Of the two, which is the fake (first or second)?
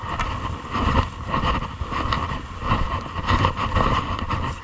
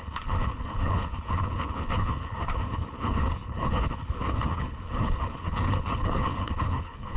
second